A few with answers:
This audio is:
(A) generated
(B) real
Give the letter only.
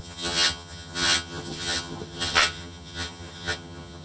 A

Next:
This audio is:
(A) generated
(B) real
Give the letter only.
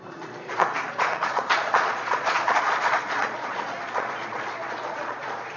A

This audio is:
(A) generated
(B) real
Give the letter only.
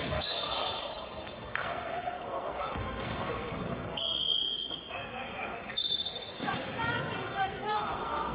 A